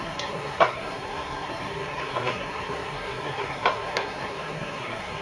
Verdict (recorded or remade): remade